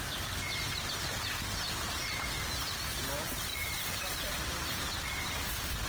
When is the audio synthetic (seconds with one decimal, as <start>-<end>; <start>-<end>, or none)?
3.5-5.2